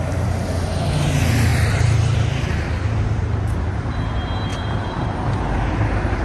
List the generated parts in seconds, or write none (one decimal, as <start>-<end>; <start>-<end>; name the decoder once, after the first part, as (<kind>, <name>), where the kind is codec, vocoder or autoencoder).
1.5-3.9 (vocoder, BigVGAN v2); 4.5-6.2